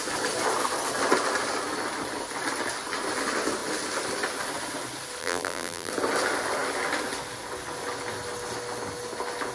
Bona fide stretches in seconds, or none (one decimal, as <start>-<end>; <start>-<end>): 0.0-5.2; 5.9-9.5